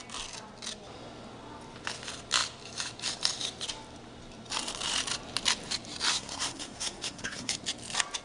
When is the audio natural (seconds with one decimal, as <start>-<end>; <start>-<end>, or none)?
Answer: 0.0-6.1; 7.5-8.2